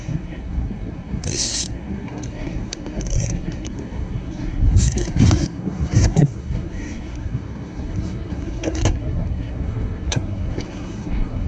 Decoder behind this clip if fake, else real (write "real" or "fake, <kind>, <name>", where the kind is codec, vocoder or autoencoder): fake, codec, SNAC